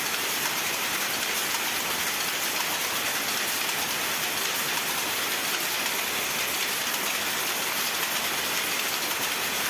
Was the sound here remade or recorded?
recorded